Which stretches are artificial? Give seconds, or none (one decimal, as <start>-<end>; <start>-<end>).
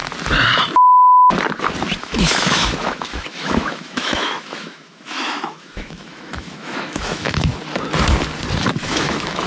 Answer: 2.0-7.5; 8.8-9.5